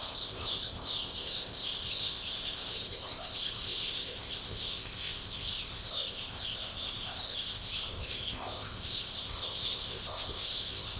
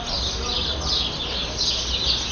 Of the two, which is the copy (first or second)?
first